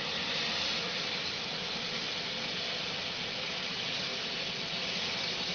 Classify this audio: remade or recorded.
recorded